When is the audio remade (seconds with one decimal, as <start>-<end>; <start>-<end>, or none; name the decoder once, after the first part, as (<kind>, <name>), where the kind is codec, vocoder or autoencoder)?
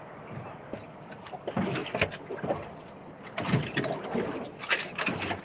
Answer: none